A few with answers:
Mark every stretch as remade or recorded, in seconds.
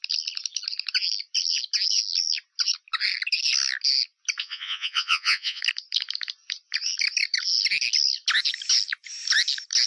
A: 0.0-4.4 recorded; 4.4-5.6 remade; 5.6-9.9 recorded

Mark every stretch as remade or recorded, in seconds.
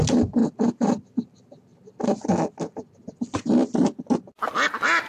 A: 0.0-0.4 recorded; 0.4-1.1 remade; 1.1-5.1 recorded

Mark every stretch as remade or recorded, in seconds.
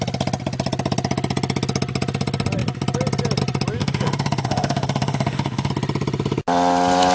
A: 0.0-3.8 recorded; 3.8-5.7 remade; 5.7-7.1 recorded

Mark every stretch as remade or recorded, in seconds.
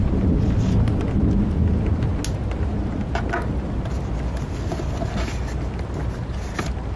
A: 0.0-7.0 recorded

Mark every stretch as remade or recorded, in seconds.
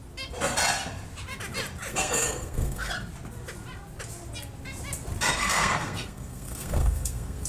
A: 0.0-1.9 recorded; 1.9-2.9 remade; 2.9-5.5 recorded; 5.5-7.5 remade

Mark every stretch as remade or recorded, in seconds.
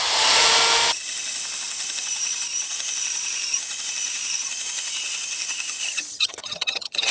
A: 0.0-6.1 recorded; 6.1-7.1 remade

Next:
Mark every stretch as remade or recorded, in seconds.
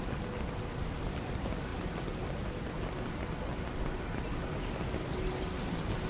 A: 0.0-6.1 recorded